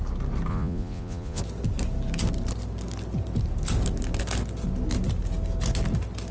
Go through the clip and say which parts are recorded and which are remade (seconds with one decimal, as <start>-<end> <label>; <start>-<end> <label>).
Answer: 0.0-0.5 recorded; 0.5-1.4 remade; 1.4-6.3 recorded